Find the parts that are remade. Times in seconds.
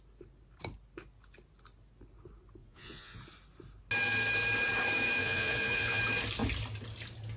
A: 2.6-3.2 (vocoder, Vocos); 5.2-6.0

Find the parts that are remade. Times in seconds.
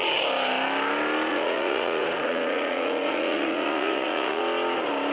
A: 1.3-4.4 (vocoder, Vocos)